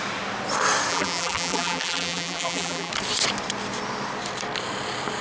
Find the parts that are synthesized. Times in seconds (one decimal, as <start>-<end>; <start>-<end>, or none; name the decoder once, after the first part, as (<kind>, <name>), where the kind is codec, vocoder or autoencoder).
0.9-2.9 (vocoder, BigVGAN v2)